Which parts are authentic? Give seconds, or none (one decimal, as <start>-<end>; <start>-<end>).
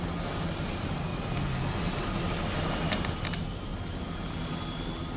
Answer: 1.1-2.6; 3.7-5.2